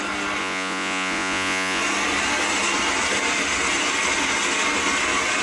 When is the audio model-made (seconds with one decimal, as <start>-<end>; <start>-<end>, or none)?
0.4-1.8